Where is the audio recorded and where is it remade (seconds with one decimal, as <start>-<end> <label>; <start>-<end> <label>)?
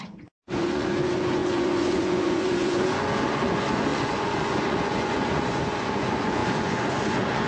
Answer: 0.0-7.5 remade